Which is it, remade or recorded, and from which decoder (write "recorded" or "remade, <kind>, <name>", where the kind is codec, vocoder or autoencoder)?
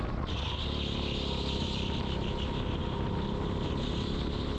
recorded